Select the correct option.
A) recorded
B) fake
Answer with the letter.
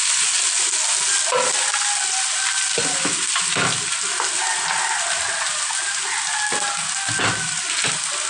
A